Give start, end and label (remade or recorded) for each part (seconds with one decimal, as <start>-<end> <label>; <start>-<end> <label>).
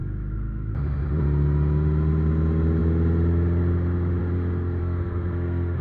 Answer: 0.0-0.7 remade; 0.7-4.8 recorded; 4.8-5.8 remade